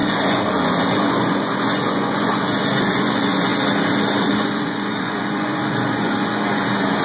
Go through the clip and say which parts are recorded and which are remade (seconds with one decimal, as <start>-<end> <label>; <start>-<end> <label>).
0.0-3.5 remade; 3.5-4.2 recorded; 4.2-7.0 remade